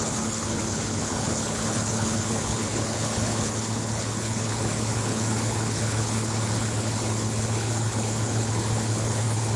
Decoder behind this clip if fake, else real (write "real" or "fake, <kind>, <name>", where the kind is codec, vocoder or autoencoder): fake, codec, HILCodec